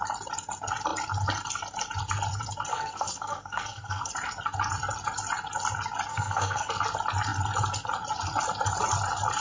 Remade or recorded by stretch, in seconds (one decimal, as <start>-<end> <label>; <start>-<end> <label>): 0.0-2.7 recorded; 2.7-4.1 remade; 4.1-6.1 recorded; 6.1-6.7 remade; 6.7-9.4 recorded